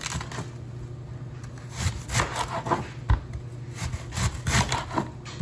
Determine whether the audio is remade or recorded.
recorded